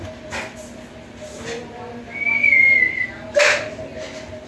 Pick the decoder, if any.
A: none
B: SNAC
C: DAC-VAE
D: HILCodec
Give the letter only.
A